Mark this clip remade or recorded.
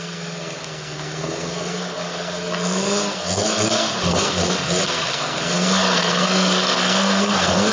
remade